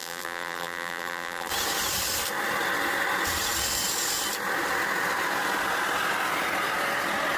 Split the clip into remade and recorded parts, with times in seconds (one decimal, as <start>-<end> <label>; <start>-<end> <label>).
0.0-1.5 remade; 1.5-7.4 recorded

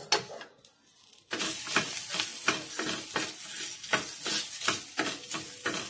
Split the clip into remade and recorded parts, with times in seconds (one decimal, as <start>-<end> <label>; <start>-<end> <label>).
0.0-1.3 recorded; 1.3-2.3 remade; 2.3-5.9 recorded

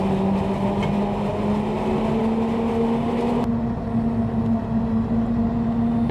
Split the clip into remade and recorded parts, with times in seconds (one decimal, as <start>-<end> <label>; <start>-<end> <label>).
0.0-6.1 recorded

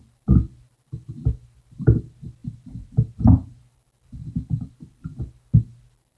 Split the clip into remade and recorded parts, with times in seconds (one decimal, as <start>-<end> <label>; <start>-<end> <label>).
0.0-2.0 remade; 2.0-3.6 recorded; 3.6-5.2 remade; 5.2-6.2 recorded